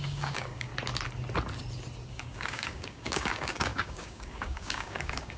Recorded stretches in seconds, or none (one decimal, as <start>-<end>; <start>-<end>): 0.7-2.1